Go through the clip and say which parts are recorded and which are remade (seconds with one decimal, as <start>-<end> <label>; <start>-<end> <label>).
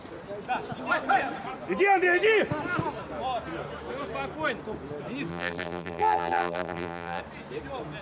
0.0-5.3 recorded; 5.3-7.2 remade; 7.2-8.0 recorded